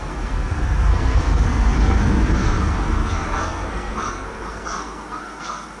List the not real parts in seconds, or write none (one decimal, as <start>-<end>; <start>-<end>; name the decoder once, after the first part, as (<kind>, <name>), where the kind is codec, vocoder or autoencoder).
0.0-5.8 (codec, SNAC)